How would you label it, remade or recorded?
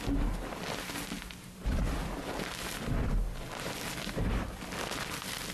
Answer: remade